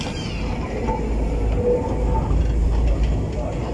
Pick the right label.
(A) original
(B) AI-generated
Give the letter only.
A